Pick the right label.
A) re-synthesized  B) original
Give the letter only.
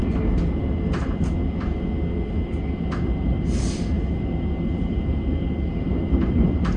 B